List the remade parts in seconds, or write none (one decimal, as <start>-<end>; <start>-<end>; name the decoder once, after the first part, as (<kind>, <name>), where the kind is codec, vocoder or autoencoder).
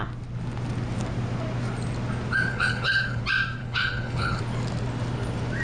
2.5-3.2 (codec, HILCodec); 3.6-4.4